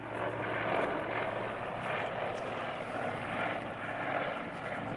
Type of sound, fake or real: real